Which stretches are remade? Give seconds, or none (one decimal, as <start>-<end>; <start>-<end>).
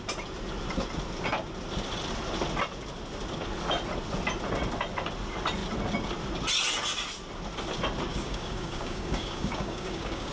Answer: 8.1-10.3